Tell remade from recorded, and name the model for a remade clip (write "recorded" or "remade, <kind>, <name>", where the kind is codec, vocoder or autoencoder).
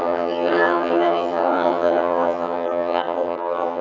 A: remade, vocoder, HiFi-GAN